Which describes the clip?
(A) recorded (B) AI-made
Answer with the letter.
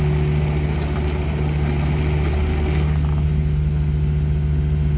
A